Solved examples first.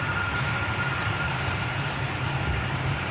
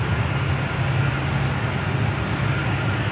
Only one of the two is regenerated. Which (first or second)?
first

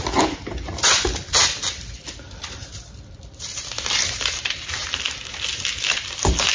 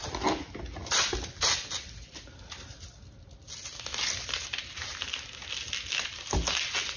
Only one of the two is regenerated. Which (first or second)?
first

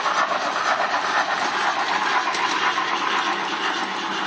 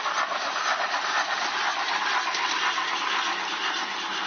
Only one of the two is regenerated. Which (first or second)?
second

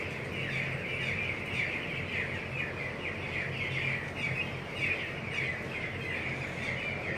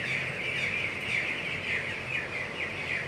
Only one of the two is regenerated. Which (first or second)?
second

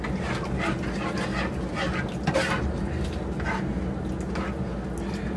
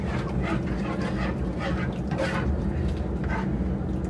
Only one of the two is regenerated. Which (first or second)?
second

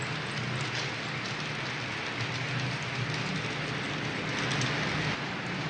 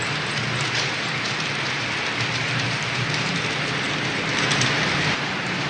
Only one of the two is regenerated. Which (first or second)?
second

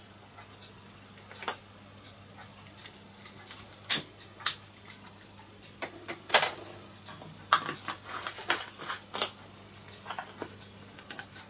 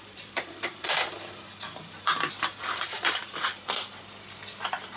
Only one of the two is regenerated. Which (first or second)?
second